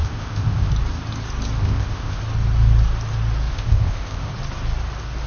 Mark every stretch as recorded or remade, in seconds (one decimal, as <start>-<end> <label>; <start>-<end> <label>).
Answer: 0.0-0.7 remade; 0.7-1.6 recorded; 1.6-2.2 remade; 2.2-3.5 recorded; 3.5-4.3 remade; 4.3-5.3 recorded